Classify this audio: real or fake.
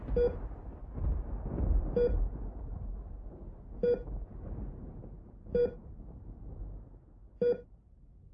real